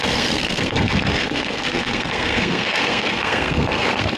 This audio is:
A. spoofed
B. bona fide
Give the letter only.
A